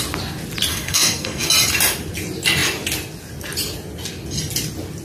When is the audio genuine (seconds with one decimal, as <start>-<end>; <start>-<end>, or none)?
0.0-0.7; 1.5-5.0